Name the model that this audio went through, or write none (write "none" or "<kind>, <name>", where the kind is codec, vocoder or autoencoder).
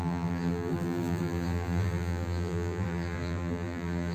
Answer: vocoder, BigVGAN v2